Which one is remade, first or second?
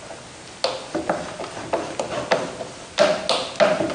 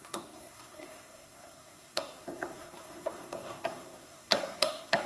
second